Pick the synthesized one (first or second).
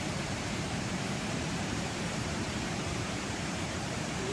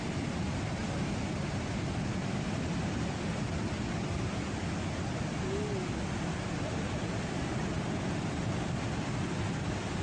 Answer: first